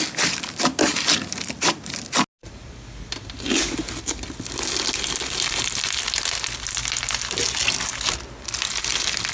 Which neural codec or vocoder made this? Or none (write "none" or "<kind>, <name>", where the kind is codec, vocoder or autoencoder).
none